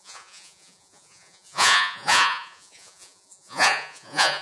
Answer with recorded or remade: remade